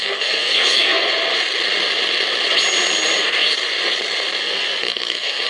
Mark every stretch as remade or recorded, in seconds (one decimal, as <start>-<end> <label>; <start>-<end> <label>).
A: 0.0-1.1 remade; 1.1-4.4 recorded; 4.4-5.5 remade